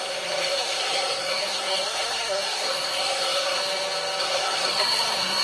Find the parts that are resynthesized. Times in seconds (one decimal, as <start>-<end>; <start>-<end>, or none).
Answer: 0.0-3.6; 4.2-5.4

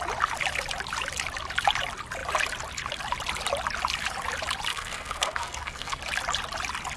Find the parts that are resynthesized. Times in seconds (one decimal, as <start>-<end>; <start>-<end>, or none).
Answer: 4.7-6.0

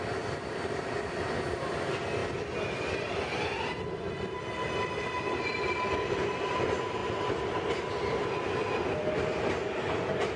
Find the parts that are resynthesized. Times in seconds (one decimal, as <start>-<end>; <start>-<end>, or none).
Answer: none